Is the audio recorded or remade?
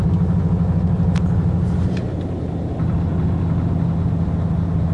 recorded